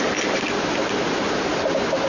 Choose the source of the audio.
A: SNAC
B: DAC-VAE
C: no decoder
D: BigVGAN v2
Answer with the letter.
C